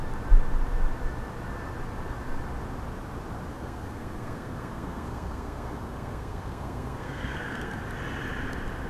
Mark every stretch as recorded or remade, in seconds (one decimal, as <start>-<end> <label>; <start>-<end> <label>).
0.0-3.5 recorded; 3.5-7.8 remade; 7.8-8.9 recorded

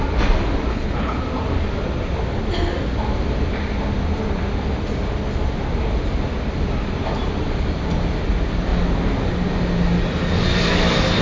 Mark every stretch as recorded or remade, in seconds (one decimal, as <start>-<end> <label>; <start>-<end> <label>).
0.0-0.7 recorded; 0.7-1.2 remade; 1.2-11.2 recorded

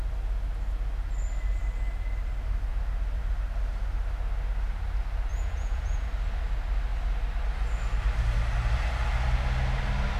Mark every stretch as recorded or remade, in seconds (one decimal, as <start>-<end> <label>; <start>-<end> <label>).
0.0-5.3 recorded; 5.3-6.1 remade; 6.1-10.2 recorded